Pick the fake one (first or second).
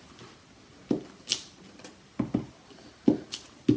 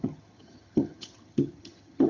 second